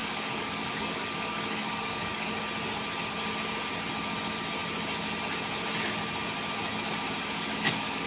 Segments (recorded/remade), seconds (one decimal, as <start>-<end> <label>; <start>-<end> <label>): 0.0-2.4 remade; 2.4-7.2 recorded; 7.2-8.1 remade